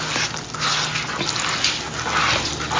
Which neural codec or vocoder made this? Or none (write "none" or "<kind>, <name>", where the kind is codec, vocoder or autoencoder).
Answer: none